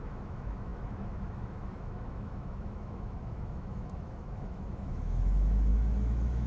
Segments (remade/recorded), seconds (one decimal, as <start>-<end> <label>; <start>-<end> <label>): 0.0-6.5 remade